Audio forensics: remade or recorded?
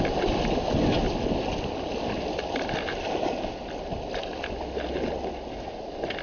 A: recorded